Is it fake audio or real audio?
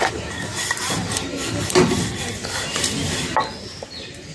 real